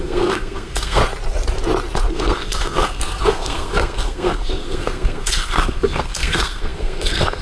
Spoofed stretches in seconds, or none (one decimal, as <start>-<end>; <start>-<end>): 0.0-1.0; 2.1-7.4